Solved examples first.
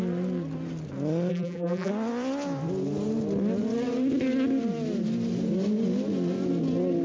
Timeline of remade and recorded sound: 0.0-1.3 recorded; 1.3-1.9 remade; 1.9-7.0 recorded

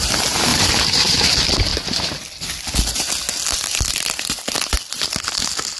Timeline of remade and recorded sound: 0.0-0.5 recorded; 0.5-1.2 remade; 1.2-5.8 recorded

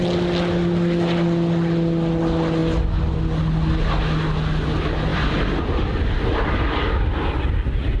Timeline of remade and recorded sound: 0.0-5.1 recorded; 5.1-6.4 remade; 6.4-8.0 recorded

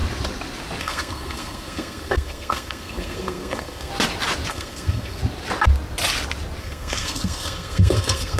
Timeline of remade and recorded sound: 0.0-0.8 recorded; 0.8-3.9 remade; 3.9-4.5 recorded; 4.5-5.2 remade; 5.2-6.6 recorded; 6.6-8.4 remade

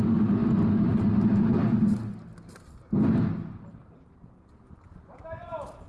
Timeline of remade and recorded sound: 0.0-5.9 recorded

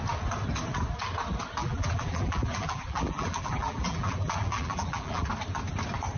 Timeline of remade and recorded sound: 0.0-1.6 recorded; 1.6-5.3 remade; 5.3-6.2 recorded

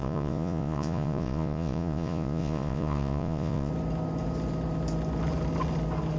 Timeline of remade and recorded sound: 0.0-3.7 remade; 3.7-6.2 recorded